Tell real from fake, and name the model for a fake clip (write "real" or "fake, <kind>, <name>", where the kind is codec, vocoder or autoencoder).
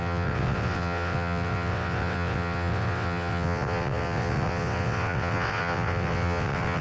fake, vocoder, WaveNeXt